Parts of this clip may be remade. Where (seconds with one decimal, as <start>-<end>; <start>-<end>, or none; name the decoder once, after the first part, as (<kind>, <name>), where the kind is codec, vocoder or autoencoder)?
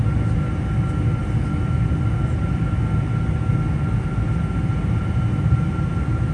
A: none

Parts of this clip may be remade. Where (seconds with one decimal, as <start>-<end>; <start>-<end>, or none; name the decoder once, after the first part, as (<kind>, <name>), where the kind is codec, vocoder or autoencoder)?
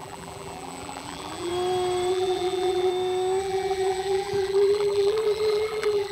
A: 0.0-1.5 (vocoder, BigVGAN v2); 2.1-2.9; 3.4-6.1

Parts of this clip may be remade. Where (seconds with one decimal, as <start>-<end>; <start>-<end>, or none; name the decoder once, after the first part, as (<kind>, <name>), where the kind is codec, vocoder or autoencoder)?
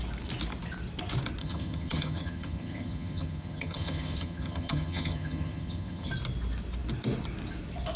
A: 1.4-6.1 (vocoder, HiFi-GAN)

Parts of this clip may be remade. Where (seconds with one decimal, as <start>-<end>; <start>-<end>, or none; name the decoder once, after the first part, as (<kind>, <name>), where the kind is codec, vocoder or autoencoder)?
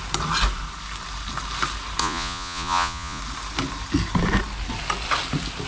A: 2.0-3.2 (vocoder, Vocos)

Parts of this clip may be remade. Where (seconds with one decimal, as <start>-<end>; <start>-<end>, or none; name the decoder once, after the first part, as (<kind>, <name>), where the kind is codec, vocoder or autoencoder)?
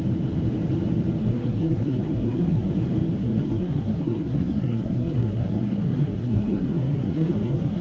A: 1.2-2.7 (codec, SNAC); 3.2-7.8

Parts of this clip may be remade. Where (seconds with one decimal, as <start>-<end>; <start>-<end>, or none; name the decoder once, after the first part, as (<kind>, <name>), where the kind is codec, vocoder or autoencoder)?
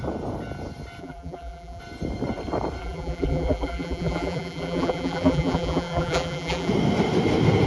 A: 1.0-1.8 (vocoder, BigVGAN v2); 2.8-6.7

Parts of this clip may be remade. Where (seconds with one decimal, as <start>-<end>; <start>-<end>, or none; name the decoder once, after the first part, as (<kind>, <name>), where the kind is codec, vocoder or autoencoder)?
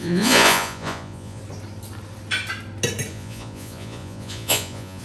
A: 0.0-1.4 (vocoder, Vocos); 3.1-5.0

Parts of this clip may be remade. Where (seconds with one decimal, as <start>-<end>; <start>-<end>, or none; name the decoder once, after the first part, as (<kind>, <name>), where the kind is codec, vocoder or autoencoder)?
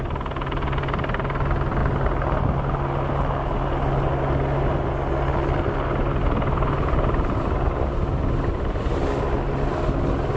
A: none